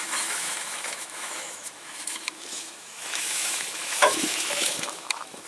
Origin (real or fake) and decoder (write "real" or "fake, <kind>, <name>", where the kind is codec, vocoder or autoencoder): fake, autoencoder, DAC-VAE